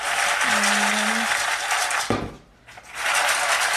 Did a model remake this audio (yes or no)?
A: no